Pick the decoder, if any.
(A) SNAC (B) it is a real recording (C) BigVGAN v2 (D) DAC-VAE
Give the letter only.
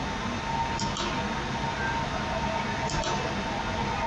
B